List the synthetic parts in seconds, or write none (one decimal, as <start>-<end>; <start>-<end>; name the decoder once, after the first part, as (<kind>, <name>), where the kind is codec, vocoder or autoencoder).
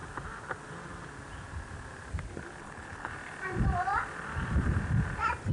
2.6-3.1 (codec, HILCodec)